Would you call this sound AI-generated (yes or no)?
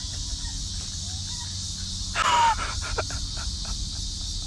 no